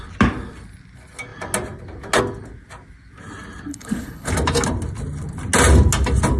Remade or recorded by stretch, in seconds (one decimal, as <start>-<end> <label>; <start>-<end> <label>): 0.0-3.7 recorded; 3.7-4.3 remade; 4.3-6.4 recorded